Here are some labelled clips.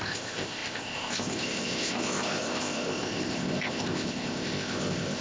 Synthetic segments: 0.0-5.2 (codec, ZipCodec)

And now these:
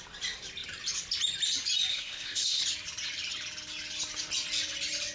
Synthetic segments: 1.9-2.6 (codec, ZipCodec)

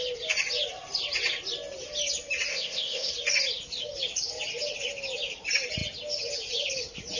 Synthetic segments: 2.5-3.1 (codec, ZipCodec)

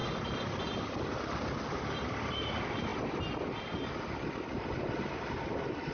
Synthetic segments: none

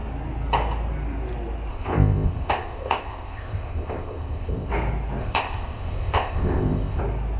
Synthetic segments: 1.7-4.7 (codec, ZipCodec); 5.2-7.0

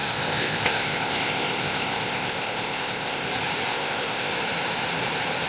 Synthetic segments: 0.0-3.3 (codec, ZipCodec); 3.7-4.3